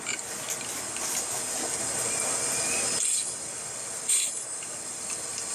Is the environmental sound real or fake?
real